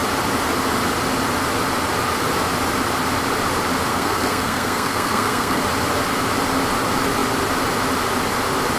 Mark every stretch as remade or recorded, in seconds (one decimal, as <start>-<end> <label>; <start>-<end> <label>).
0.0-3.9 recorded; 3.9-5.6 remade; 5.6-8.8 recorded